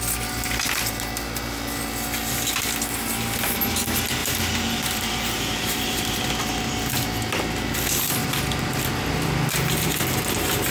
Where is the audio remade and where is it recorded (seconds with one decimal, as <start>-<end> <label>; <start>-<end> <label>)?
0.0-4.2 recorded; 4.2-6.0 remade; 6.0-8.2 recorded; 8.2-8.9 remade; 8.9-10.7 recorded

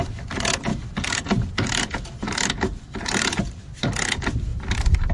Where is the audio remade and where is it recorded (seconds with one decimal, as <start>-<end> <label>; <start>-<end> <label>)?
0.0-0.7 recorded; 0.7-3.6 remade; 3.6-5.1 recorded

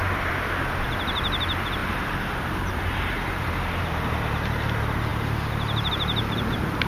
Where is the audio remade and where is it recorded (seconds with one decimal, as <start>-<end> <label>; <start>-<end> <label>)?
0.0-1.8 recorded; 1.8-3.8 remade; 3.8-6.9 recorded

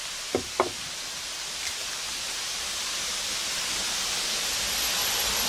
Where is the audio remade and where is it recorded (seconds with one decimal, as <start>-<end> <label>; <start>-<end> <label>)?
0.0-5.5 recorded

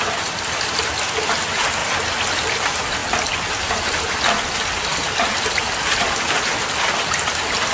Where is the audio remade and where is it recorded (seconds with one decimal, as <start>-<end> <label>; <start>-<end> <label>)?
0.0-1.8 remade; 1.8-2.3 recorded; 2.3-3.0 remade; 3.0-3.6 recorded; 3.6-4.9 remade; 4.9-7.3 recorded; 7.3-7.7 remade

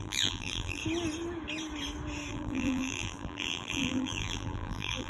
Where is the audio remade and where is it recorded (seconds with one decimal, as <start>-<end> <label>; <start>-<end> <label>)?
0.0-0.8 remade; 0.8-2.3 recorded; 2.3-5.1 remade

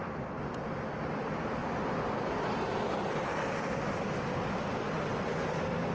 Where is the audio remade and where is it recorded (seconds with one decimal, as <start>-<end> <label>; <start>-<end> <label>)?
0.0-1.0 recorded; 1.0-1.6 remade; 1.6-2.2 recorded; 2.2-5.9 remade

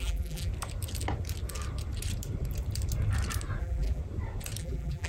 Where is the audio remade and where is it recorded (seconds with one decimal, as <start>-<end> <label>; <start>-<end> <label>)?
0.0-0.5 remade; 0.5-3.6 recorded; 3.6-4.0 remade; 4.0-4.6 recorded; 4.6-5.1 remade